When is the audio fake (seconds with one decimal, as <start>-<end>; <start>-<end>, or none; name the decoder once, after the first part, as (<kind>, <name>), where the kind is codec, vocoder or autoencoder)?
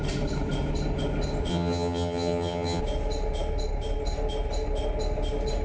1.5-2.8 (vocoder, HiFi-GAN)